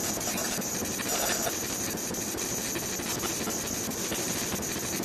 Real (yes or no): yes